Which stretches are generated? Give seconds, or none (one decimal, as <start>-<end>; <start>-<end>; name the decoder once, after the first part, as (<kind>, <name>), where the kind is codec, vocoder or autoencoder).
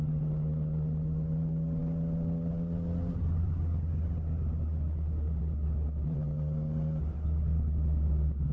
none